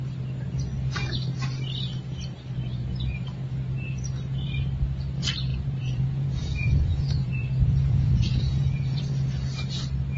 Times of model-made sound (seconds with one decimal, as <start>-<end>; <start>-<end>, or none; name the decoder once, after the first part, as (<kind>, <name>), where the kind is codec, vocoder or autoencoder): 5.5-9.0 (vocoder, Vocos)